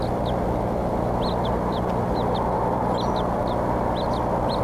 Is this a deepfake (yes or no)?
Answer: no